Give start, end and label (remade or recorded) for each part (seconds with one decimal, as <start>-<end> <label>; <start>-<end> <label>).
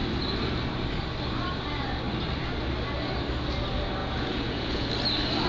0.0-4.0 recorded; 4.0-4.9 remade; 4.9-5.5 recorded